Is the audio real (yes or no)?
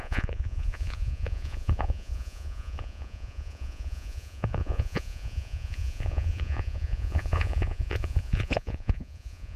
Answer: no